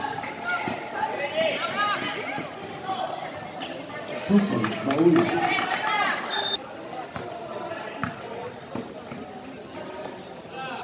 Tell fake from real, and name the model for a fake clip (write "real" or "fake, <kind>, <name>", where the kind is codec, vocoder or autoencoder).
real